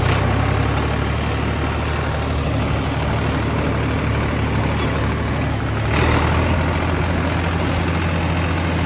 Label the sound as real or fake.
real